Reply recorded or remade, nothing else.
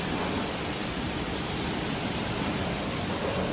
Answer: recorded